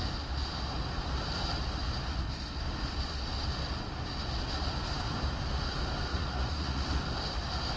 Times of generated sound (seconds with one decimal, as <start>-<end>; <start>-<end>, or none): 6.1-6.8